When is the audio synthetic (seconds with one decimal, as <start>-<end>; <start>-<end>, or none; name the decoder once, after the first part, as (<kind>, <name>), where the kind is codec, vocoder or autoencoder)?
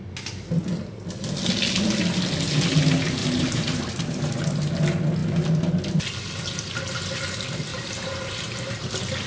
3.2-4.3 (vocoder, BigVGAN v2); 7.7-8.7